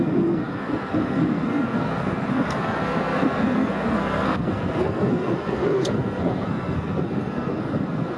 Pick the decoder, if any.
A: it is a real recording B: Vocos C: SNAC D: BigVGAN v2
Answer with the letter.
C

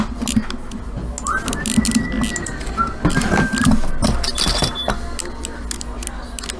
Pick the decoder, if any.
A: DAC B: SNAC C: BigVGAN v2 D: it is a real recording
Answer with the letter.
D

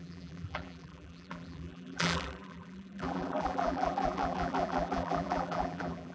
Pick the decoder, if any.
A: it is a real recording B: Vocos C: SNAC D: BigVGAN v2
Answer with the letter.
D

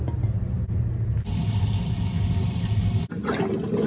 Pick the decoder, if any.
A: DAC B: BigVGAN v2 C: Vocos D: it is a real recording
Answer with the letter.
D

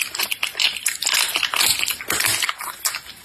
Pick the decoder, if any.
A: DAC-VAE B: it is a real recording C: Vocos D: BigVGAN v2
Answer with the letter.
B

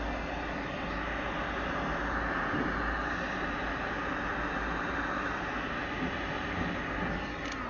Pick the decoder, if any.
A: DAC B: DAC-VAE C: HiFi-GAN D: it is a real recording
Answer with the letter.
D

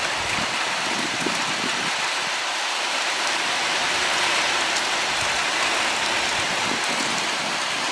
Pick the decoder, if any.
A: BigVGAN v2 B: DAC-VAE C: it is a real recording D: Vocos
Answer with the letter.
C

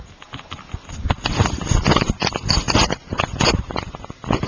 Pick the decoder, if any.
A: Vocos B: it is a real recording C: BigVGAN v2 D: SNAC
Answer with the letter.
B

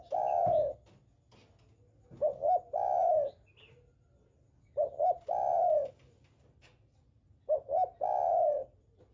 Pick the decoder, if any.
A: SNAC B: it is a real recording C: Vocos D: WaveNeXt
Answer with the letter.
B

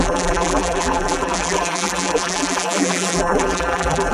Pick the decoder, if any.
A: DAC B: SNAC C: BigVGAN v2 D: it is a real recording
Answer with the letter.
C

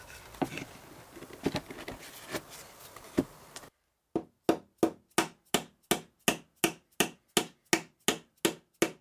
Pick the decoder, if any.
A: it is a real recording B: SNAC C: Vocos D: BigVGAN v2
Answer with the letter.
A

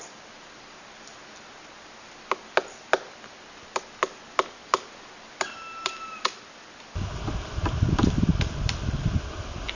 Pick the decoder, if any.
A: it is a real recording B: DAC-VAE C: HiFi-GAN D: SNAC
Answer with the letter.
A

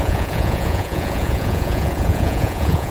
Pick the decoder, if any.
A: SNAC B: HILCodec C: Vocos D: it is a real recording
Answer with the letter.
C